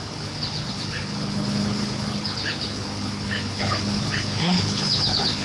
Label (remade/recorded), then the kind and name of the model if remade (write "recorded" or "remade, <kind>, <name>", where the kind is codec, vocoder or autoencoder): remade, codec, HILCodec